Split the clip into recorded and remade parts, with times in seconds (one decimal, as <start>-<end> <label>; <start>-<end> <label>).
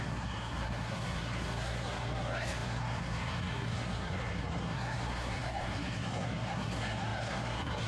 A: 0.0-7.9 remade